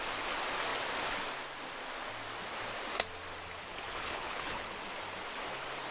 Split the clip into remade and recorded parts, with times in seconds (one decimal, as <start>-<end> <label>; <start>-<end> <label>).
0.0-3.6 recorded; 3.6-4.8 remade; 4.8-5.9 recorded